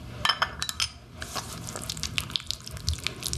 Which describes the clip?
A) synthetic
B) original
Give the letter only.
B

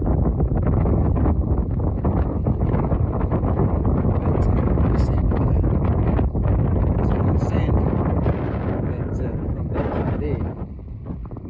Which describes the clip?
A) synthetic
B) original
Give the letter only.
B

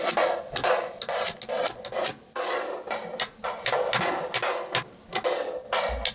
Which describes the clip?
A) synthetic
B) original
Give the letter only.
B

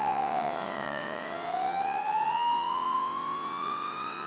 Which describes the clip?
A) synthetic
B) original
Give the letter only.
A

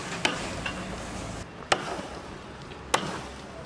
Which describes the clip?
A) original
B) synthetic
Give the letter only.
A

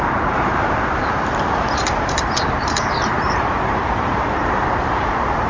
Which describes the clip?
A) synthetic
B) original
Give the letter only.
A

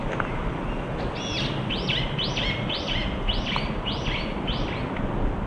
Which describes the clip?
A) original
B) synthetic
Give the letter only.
A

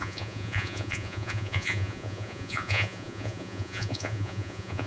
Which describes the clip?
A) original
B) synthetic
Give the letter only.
B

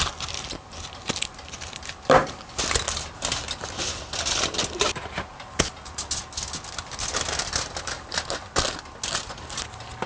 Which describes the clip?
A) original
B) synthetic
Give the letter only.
A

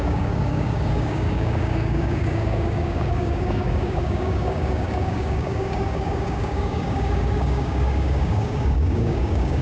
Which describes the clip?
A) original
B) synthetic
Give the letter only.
B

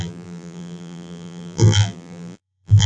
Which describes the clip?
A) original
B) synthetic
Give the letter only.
B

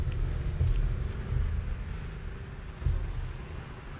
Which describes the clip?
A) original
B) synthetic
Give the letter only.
A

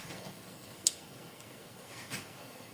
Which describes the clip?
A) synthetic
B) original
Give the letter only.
A